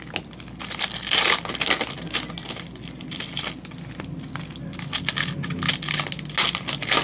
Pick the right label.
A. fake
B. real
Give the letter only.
B